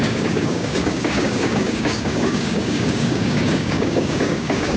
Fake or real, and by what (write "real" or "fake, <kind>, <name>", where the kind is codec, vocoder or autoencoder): fake, codec, DAC